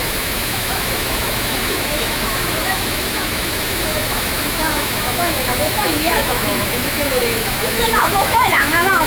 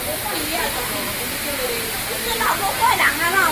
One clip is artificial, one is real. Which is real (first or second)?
second